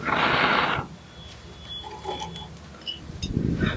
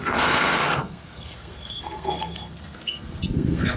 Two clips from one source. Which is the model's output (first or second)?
second